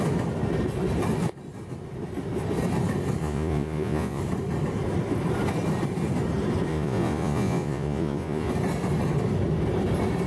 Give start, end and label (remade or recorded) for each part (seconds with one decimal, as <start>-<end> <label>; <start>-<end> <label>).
0.0-3.2 recorded; 3.2-4.2 remade; 4.2-6.7 recorded; 6.7-8.5 remade; 8.5-10.3 recorded